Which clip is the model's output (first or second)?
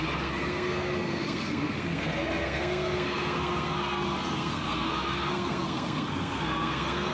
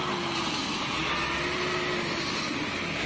first